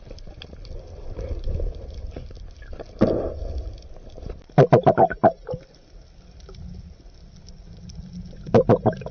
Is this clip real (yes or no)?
no